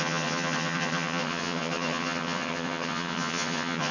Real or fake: fake